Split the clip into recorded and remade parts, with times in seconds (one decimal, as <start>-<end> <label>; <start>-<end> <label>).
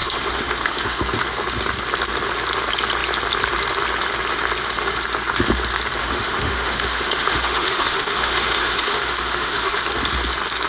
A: 0.0-1.0 remade; 1.0-6.0 recorded; 6.0-9.8 remade; 9.8-10.7 recorded